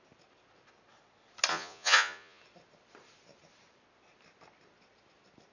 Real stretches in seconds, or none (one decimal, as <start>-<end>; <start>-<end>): 0.0-1.5; 2.4-5.5